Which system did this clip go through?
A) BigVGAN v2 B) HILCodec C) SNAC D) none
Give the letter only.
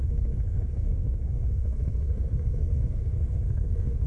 C